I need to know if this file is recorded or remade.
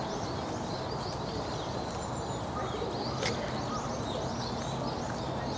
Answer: recorded